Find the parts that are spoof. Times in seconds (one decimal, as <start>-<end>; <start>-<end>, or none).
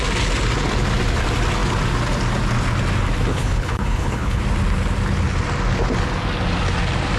3.3-4.4